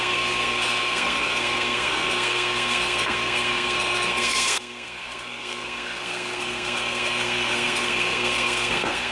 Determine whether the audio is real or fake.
fake